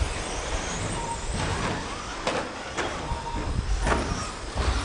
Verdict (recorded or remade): recorded